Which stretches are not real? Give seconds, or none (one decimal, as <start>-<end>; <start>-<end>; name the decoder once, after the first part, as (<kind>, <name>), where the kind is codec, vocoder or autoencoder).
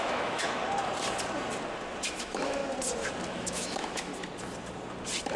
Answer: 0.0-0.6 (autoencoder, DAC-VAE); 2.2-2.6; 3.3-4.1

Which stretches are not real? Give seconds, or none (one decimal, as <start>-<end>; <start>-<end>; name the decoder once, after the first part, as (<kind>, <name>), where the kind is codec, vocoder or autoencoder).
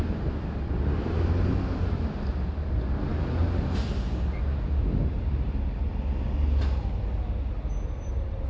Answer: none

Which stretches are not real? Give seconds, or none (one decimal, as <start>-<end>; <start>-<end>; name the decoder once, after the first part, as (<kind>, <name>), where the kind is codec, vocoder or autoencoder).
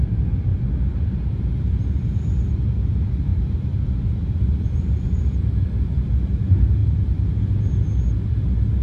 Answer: 3.3-5.7 (vocoder, BigVGAN v2); 6.8-7.4